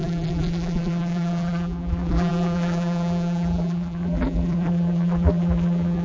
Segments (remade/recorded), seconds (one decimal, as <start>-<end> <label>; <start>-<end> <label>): 0.0-6.0 remade